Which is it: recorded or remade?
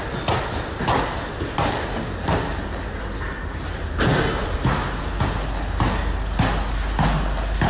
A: recorded